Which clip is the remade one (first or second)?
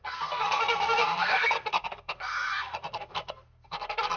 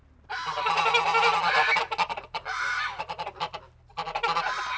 first